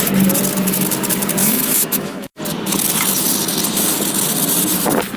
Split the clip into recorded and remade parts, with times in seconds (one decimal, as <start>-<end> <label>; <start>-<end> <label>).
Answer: 0.0-1.4 recorded; 1.4-2.4 remade; 2.4-5.2 recorded